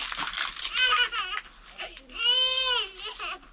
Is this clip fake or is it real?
real